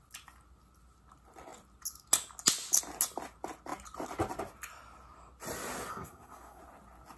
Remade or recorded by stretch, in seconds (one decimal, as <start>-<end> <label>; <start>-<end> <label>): 0.0-5.9 recorded; 5.9-6.6 remade; 6.6-7.2 recorded